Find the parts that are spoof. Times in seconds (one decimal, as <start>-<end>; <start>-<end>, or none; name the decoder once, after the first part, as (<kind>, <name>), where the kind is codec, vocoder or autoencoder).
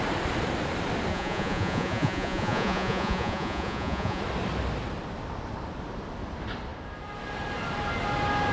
1.1-4.2 (vocoder, Vocos)